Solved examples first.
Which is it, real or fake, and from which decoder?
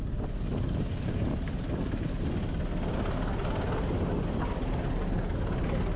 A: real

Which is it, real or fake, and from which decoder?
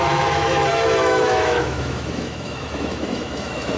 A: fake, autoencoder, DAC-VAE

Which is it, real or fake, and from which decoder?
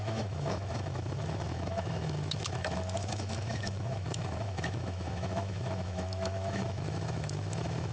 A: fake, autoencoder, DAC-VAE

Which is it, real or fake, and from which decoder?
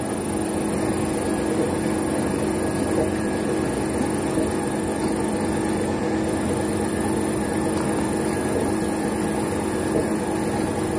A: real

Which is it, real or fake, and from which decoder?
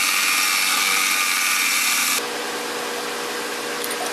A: real